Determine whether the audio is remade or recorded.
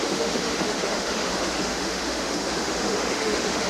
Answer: remade